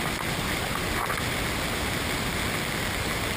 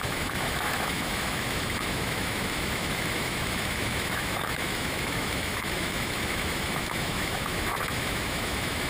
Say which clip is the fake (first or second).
second